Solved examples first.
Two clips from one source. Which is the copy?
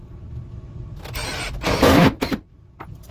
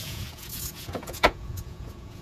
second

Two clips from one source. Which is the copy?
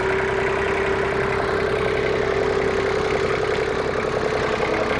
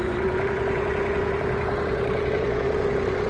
second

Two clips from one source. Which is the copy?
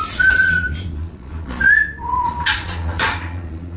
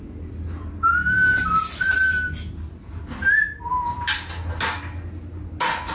first